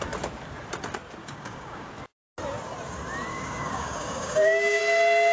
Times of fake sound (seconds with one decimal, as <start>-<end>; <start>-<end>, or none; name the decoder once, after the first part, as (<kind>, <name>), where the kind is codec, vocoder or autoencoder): 1.2-1.9 (codec, DAC); 3.3-4.8